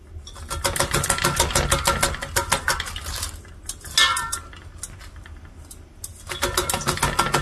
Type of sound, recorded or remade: recorded